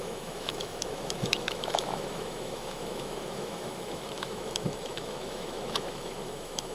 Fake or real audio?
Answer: fake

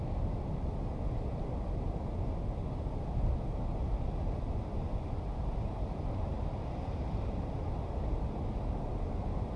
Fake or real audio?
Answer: real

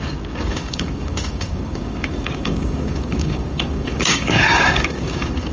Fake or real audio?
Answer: fake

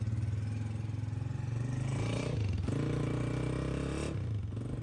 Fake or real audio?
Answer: real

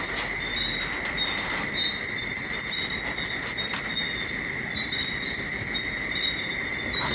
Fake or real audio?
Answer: real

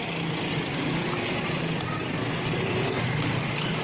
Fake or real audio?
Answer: real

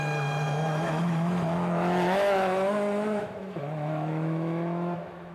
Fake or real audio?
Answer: fake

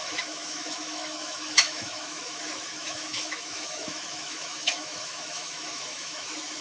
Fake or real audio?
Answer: fake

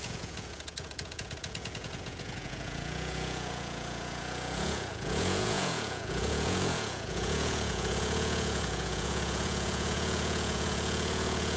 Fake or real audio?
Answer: fake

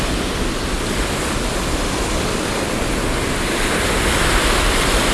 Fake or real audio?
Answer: real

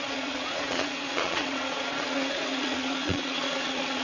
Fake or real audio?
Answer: fake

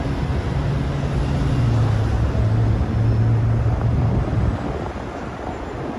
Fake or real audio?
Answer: real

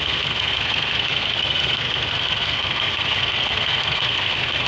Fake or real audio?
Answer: fake